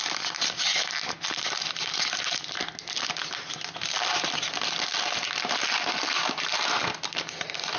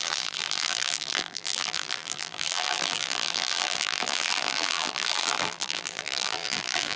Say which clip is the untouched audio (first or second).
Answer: first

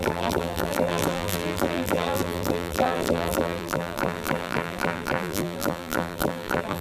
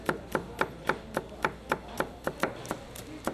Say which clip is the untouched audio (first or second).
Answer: second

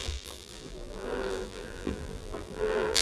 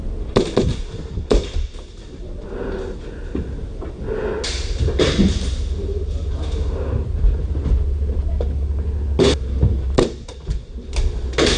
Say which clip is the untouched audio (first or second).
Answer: second